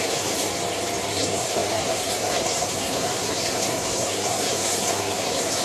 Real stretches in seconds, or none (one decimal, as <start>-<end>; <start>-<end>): 0.5-1.1